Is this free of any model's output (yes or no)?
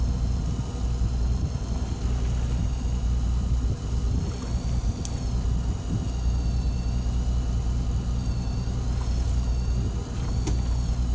yes